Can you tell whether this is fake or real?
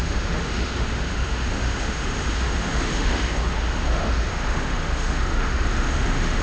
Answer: fake